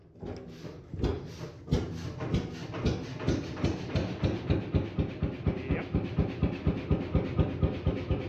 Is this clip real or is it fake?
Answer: real